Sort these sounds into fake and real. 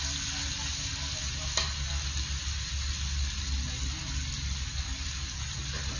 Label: real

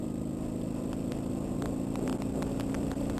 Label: real